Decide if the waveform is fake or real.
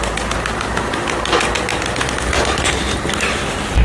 real